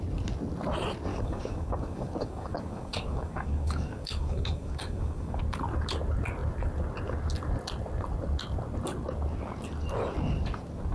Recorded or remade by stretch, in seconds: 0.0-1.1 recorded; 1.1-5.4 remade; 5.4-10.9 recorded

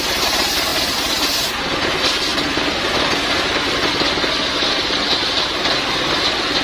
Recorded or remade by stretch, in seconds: 0.0-6.6 recorded

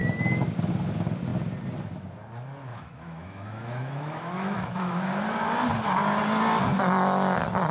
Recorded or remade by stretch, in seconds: 0.0-2.7 recorded; 2.7-5.2 remade; 5.2-7.7 recorded

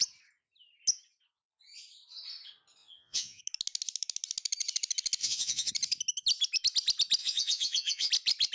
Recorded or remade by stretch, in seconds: 0.0-2.8 recorded; 2.8-3.4 remade; 3.4-5.2 recorded; 5.2-5.7 remade; 5.7-7.2 recorded; 7.2-8.1 remade; 8.1-8.5 recorded

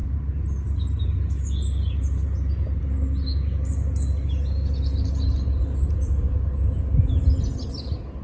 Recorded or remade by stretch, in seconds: 0.0-8.2 recorded

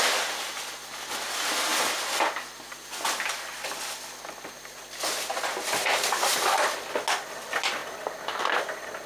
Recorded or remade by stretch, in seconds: 0.0-9.1 recorded